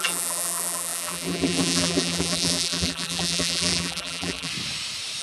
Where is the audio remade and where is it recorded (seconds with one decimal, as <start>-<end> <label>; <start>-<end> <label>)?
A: 0.0-4.5 remade; 4.5-5.2 recorded